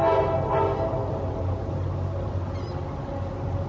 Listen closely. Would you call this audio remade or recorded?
recorded